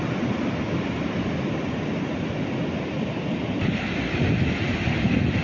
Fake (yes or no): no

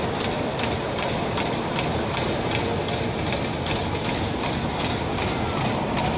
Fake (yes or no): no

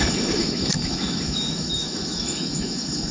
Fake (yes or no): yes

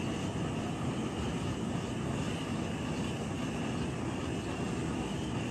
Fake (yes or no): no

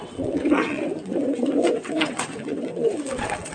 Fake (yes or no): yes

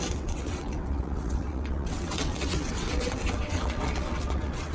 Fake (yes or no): yes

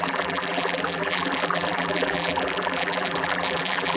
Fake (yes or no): yes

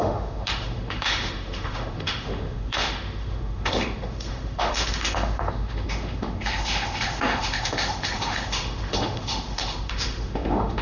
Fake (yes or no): yes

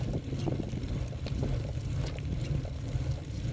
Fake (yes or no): no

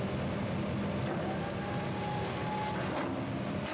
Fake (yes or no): no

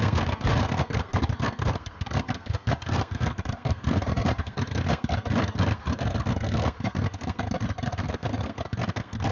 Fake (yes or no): yes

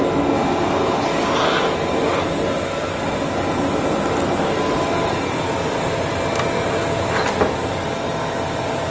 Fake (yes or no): no